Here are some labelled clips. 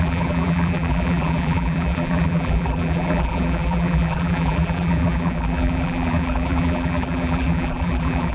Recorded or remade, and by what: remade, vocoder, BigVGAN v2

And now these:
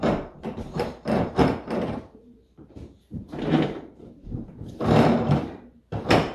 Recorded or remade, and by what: remade, vocoder, BigVGAN v2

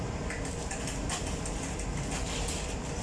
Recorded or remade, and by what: recorded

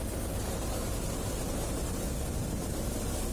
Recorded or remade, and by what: recorded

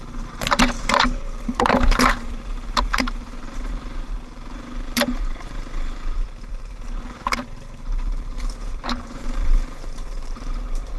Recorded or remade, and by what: remade, vocoder, BigVGAN v2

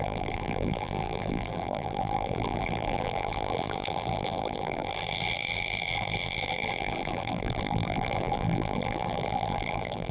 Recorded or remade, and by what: remade, vocoder, BigVGAN v2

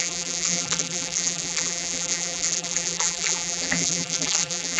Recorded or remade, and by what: remade, vocoder, BigVGAN v2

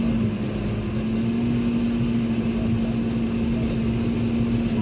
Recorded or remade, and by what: recorded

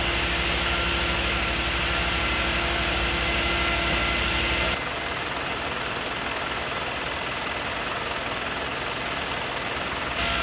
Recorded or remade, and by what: recorded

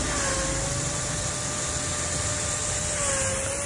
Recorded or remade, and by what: recorded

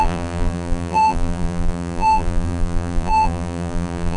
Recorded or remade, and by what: remade, vocoder, BigVGAN v2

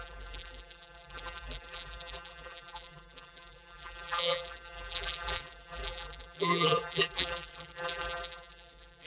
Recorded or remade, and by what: remade, vocoder, BigVGAN v2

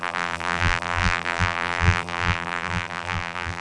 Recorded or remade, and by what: remade, vocoder, BigVGAN v2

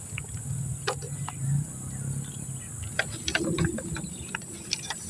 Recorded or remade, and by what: recorded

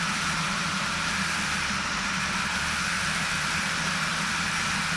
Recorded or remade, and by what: remade, vocoder, BigVGAN v2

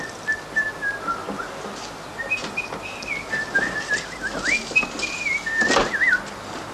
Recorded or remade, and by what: recorded